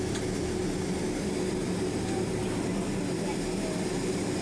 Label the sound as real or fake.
real